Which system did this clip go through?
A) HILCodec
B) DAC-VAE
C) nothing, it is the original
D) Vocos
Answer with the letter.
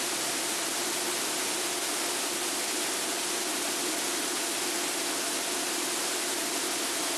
C